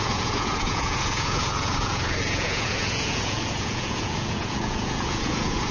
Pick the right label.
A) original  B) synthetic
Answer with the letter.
B